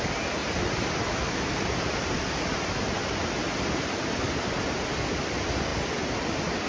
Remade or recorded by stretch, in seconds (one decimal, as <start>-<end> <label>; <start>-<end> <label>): 0.0-0.4 recorded; 0.4-3.0 remade; 3.0-6.7 recorded